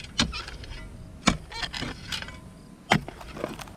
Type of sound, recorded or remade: recorded